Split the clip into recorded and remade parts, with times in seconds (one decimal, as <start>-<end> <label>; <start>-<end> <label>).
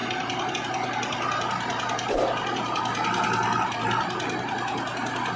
0.0-5.4 recorded